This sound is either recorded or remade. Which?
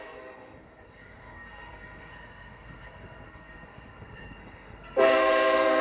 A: remade